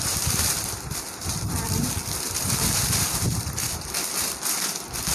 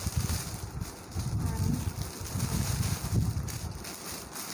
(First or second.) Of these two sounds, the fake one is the first